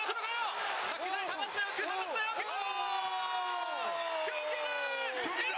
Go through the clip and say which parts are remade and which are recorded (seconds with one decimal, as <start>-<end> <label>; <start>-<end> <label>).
0.0-5.6 recorded

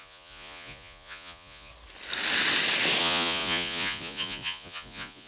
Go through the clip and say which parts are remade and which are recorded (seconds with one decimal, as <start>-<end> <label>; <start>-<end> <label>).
0.0-1.7 remade; 1.7-3.0 recorded; 3.0-5.3 remade

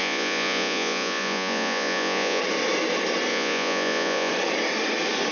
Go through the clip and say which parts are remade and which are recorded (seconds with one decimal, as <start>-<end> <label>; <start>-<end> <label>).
0.0-2.4 remade; 2.4-3.3 recorded; 3.3-4.3 remade; 4.3-5.3 recorded

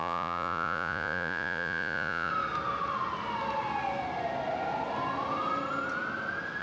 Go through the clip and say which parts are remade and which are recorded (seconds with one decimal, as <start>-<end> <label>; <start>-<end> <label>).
0.0-2.3 remade; 2.3-6.6 recorded